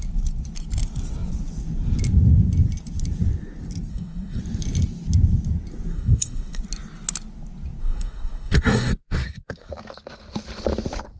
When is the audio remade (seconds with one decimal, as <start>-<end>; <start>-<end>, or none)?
3.9-4.4; 5.9-6.6; 7.8-9.7